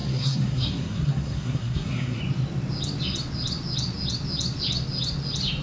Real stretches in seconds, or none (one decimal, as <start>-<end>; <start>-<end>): 2.2-5.6